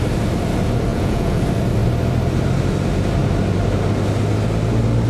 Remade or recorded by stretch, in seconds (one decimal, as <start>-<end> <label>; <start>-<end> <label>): 0.0-0.9 recorded; 0.9-1.4 remade; 1.4-5.1 recorded